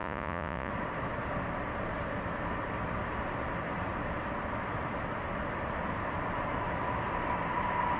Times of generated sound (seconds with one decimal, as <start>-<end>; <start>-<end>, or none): 0.0-0.7